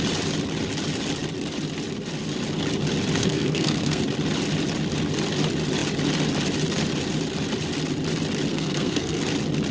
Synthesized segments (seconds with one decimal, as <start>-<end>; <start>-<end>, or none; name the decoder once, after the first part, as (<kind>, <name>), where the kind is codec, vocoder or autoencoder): 3.2-4.0 (codec, SNAC); 8.5-9.2